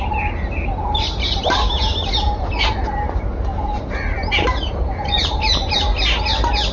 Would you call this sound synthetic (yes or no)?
no